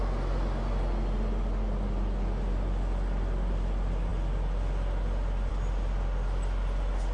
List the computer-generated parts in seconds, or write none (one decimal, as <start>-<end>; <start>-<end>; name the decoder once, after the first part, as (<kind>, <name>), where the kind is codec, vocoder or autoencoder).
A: none